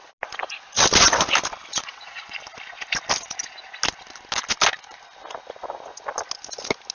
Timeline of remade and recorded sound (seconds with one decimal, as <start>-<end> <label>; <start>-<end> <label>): 0.0-1.7 recorded; 1.7-2.4 remade; 2.4-6.9 recorded